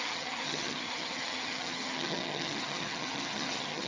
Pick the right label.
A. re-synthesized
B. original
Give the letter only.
A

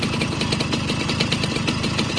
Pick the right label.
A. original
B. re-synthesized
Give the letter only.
B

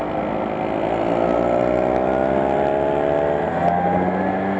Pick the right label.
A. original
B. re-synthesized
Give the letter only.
A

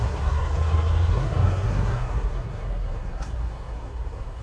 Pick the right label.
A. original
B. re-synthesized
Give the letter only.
B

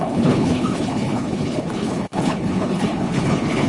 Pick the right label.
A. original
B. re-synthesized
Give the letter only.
B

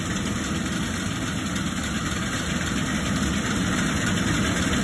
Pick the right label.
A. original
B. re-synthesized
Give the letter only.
A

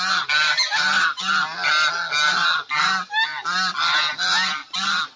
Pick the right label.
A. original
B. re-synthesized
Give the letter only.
A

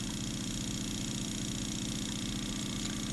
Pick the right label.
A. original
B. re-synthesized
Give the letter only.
A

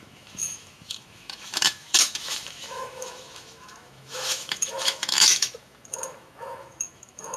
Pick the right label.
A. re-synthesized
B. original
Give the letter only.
A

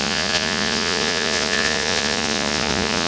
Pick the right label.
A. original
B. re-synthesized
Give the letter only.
B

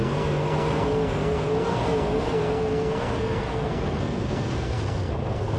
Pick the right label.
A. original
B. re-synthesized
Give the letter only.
B